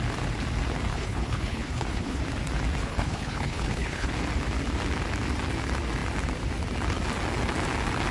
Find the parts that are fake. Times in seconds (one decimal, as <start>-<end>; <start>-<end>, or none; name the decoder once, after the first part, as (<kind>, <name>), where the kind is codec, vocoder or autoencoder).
0.9-2.2 (codec, HILCodec); 2.8-4.1